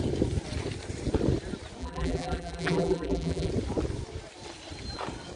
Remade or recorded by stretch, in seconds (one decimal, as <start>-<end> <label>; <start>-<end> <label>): 0.0-1.8 recorded; 1.8-3.5 remade; 3.5-5.4 recorded